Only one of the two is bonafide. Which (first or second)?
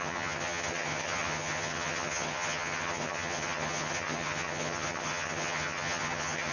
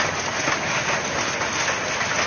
second